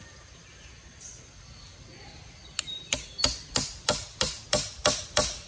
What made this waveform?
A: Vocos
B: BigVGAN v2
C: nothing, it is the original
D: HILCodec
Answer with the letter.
C